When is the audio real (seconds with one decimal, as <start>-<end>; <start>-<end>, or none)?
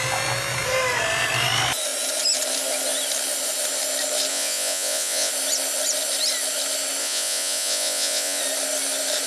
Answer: 0.0-4.3; 5.3-7.0; 8.4-9.3